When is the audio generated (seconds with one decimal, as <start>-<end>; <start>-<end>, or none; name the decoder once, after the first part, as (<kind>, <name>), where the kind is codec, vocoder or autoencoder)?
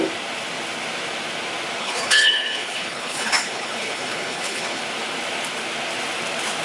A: 1.8-4.8 (codec, HILCodec)